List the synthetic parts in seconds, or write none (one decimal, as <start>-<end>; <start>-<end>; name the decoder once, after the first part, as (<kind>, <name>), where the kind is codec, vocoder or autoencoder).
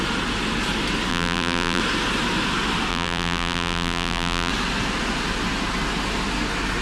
1.1-1.8 (vocoder, BigVGAN v2); 2.9-4.5